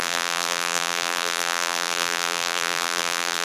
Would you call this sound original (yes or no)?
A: no